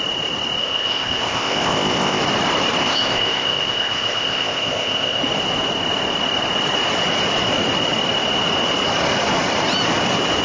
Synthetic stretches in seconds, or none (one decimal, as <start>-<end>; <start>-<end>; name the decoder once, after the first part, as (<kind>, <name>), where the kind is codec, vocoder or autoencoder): 0.6-2.2 (codec, ZipCodec); 2.8-5.2